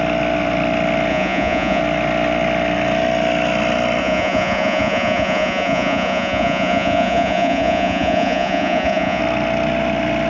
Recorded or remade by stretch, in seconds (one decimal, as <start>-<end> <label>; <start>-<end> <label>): 0.0-1.1 recorded; 1.1-1.8 remade; 1.8-4.0 recorded; 4.0-9.2 remade; 9.2-10.3 recorded